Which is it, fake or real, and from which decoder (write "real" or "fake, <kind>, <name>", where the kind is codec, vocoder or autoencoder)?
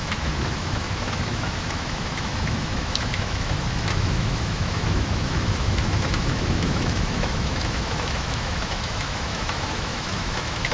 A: fake, autoencoder, DAC-VAE